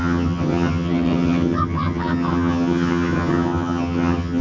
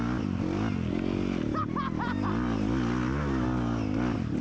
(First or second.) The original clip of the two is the second